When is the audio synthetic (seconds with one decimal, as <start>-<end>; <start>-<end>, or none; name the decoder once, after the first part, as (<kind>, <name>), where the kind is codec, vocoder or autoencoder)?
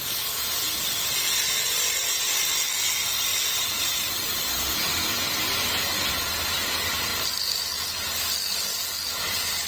3.3-6.2 (vocoder, BigVGAN v2)